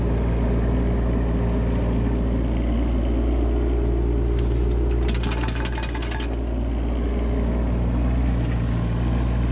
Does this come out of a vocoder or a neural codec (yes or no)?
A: no